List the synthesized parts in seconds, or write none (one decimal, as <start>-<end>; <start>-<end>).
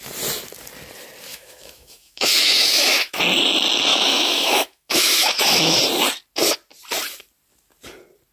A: 1.3-3.2; 3.9-5.8